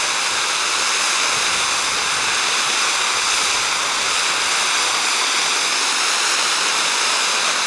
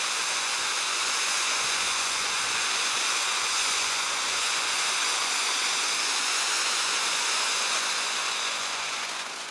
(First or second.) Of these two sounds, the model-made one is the second